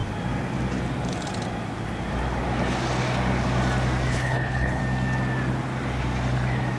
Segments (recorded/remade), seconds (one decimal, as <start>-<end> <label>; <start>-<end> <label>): 0.0-4.1 recorded; 4.1-4.8 remade; 4.8-6.8 recorded